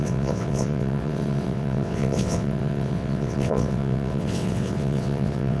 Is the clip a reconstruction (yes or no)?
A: yes